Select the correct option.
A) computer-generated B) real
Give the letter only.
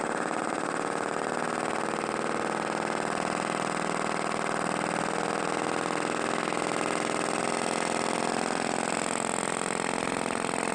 B